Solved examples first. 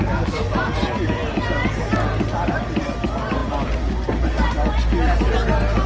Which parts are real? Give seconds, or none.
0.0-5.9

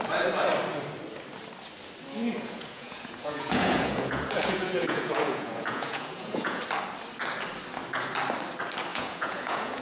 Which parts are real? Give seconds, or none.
0.0-2.2; 6.6-8.9

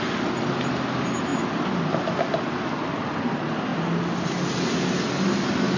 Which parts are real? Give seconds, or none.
0.0-5.8

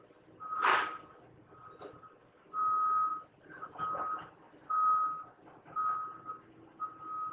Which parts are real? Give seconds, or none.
0.0-7.3